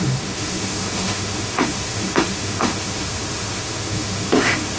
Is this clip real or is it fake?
fake